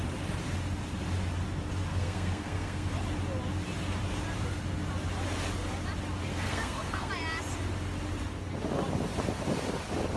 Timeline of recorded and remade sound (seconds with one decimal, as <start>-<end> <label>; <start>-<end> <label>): 0.0-1.9 recorded; 1.9-2.9 remade; 2.9-6.3 recorded; 6.3-7.1 remade; 7.1-10.2 recorded